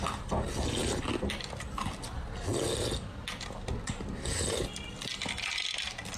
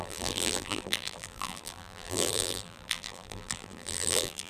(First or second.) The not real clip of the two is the second